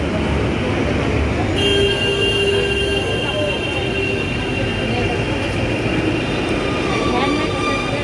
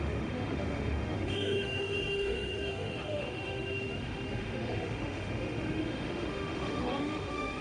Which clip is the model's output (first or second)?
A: second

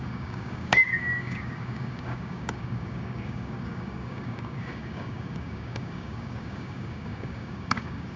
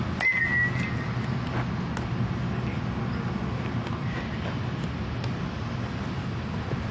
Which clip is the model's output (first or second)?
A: first